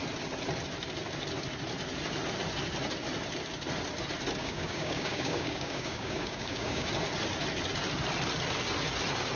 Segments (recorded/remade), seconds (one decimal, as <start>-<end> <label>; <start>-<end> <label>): 0.0-4.4 recorded; 4.4-6.9 remade; 6.9-9.4 recorded